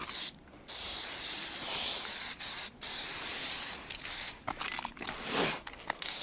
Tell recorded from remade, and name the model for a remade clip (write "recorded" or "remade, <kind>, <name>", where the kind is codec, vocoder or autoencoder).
recorded